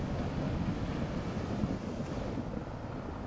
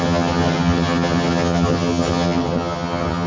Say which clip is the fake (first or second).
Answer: second